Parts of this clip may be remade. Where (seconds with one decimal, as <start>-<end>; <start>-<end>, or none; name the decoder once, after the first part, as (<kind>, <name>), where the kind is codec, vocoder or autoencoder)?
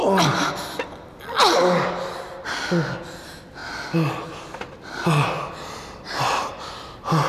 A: none